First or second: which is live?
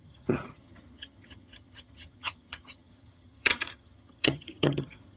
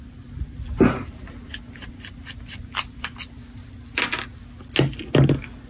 second